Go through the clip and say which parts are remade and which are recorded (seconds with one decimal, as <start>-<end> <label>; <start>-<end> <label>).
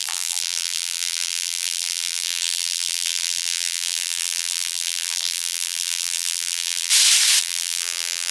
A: 0.0-6.9 remade; 6.9-7.4 recorded; 7.4-8.3 remade